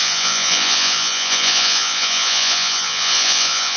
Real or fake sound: fake